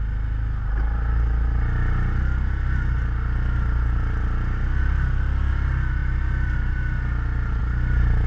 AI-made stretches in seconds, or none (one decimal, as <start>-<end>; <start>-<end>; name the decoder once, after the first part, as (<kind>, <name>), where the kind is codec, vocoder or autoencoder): none